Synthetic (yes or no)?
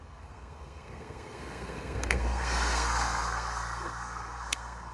yes